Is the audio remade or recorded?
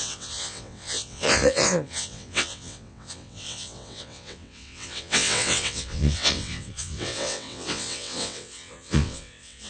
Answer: remade